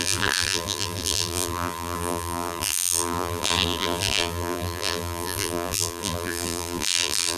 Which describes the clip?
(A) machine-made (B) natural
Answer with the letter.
A